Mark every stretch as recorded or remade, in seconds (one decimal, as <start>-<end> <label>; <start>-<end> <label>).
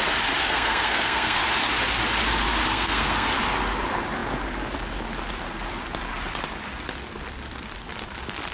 0.0-0.4 recorded; 0.4-1.4 remade; 1.4-2.7 recorded; 2.7-3.3 remade; 3.3-8.5 recorded